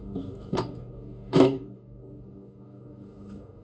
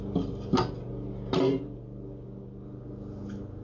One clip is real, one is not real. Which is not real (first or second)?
first